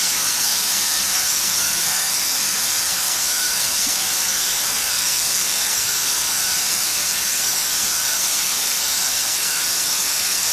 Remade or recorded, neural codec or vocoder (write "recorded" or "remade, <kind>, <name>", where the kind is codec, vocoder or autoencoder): remade, codec, SNAC